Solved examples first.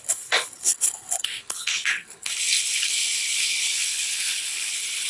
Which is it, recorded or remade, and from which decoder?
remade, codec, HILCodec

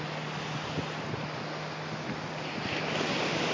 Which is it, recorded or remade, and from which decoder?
recorded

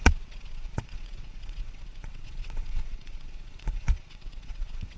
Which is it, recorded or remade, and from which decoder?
remade, vocoder, WaveNeXt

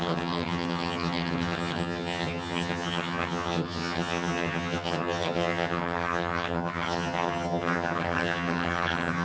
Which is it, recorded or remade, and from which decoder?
remade, vocoder, HiFi-GAN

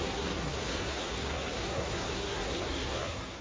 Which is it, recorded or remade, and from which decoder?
remade, codec, SNAC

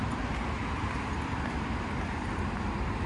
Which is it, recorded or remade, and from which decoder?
recorded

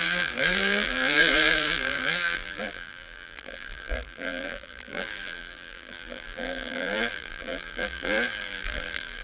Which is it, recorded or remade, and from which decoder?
remade, vocoder, BigVGAN v2